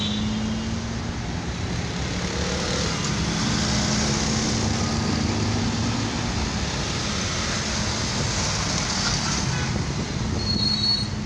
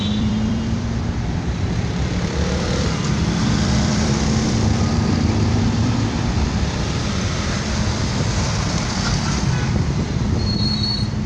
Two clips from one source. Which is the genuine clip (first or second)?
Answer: first